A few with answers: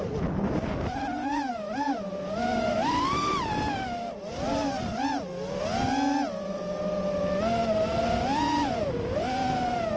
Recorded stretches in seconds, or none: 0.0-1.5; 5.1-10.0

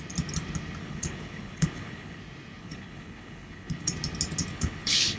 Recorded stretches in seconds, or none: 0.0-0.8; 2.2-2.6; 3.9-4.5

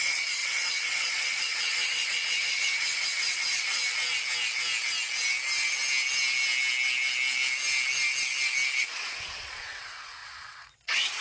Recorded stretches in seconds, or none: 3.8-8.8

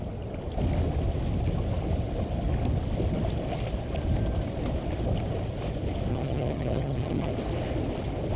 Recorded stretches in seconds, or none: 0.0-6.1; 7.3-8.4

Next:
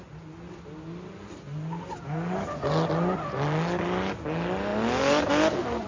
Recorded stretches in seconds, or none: 0.0-5.9